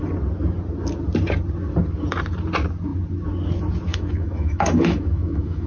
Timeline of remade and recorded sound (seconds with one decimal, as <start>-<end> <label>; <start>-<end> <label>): 0.0-3.9 recorded; 3.9-5.7 remade